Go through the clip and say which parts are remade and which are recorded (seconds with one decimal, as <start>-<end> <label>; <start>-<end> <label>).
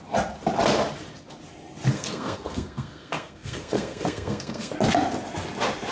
0.0-1.9 recorded; 1.9-4.7 remade; 4.7-5.9 recorded